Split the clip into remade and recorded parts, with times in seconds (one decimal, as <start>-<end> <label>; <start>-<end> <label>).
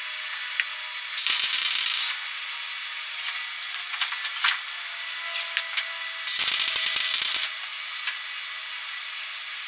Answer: 0.0-9.7 recorded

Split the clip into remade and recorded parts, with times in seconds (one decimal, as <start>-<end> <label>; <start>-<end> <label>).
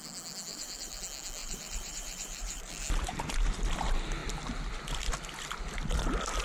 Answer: 0.0-0.5 recorded; 0.5-1.0 remade; 1.0-1.4 recorded; 1.4-2.7 remade; 2.7-6.4 recorded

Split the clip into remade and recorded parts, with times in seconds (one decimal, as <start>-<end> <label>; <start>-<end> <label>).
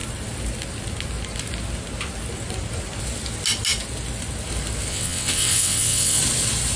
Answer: 0.0-4.9 recorded; 4.9-6.2 remade; 6.2-6.8 recorded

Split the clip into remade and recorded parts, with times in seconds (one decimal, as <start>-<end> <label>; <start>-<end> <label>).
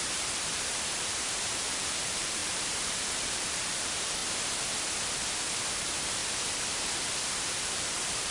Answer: 0.0-4.2 remade; 4.2-5.8 recorded; 5.8-6.2 remade; 6.2-7.7 recorded; 7.7-8.3 remade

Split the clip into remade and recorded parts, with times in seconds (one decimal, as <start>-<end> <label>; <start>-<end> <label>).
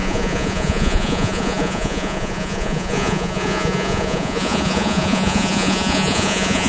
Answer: 0.0-6.7 remade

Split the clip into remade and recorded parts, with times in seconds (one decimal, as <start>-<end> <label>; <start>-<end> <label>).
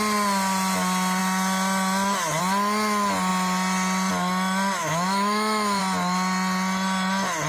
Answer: 0.0-4.8 recorded; 4.8-5.8 remade; 5.8-7.5 recorded